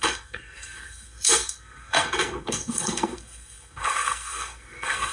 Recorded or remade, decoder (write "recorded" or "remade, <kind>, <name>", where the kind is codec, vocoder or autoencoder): remade, codec, SNAC